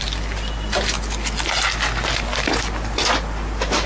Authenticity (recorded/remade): recorded